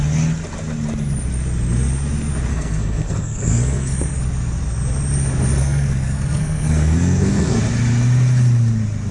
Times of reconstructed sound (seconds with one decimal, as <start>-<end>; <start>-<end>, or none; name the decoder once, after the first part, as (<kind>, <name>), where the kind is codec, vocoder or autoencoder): 2.5-4.2 (codec, SNAC); 5.6-7.6